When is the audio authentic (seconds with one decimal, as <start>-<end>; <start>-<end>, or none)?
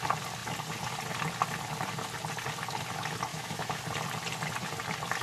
0.0-3.3; 3.8-5.2